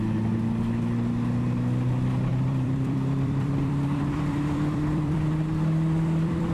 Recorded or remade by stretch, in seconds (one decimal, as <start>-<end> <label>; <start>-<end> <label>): 0.0-2.3 recorded; 2.3-6.5 remade